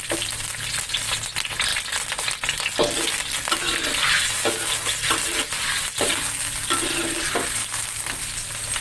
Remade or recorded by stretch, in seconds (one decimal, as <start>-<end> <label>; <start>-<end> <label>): 0.0-8.8 recorded